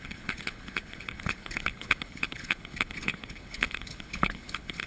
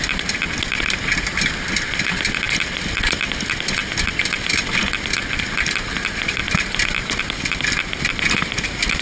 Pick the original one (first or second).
second